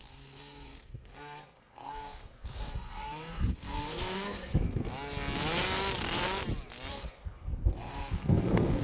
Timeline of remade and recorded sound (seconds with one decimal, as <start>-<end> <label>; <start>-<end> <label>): 0.0-4.8 remade; 4.8-6.9 recorded; 6.9-8.8 remade